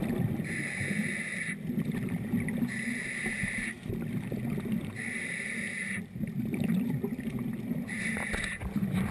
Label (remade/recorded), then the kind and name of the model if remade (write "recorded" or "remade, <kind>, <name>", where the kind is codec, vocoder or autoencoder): recorded